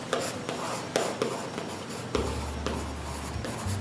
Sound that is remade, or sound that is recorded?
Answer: recorded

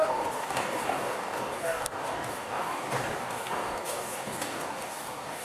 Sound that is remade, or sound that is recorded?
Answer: remade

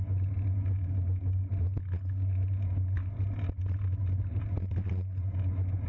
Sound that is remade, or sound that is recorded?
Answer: recorded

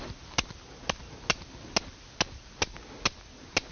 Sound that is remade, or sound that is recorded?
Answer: recorded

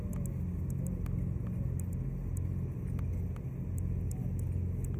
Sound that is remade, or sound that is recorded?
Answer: recorded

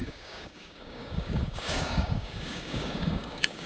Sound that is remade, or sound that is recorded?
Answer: remade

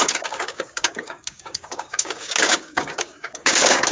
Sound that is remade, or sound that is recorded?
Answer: remade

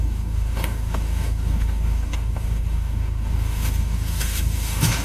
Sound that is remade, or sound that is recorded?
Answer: remade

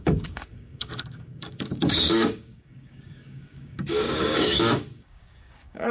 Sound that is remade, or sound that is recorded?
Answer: remade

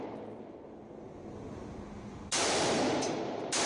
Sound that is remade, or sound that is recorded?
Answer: recorded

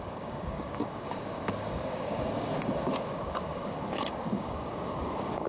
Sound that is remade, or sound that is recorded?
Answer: remade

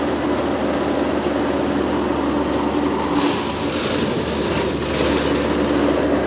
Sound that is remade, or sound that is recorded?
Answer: recorded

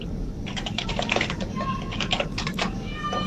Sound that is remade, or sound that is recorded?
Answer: remade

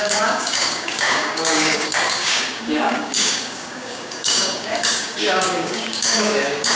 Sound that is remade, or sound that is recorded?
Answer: remade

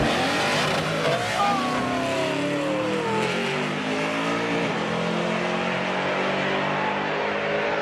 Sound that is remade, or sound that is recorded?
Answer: recorded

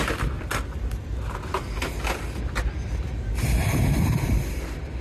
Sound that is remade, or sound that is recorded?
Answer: recorded